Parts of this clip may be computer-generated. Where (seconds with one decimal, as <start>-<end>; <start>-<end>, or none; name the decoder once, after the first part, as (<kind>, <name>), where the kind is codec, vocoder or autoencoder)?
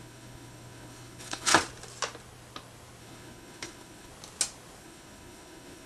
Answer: 0.0-1.5 (codec, HILCodec); 3.0-4.1; 4.8-5.9